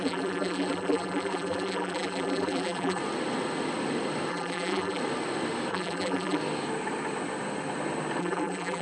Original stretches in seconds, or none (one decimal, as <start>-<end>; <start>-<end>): 3.0-4.3; 5.0-5.7; 6.4-8.2